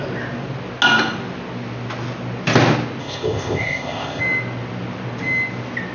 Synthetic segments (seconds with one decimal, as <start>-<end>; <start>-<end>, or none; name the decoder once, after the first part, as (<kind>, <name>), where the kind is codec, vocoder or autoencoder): 3.0-4.2 (codec, ZipCodec)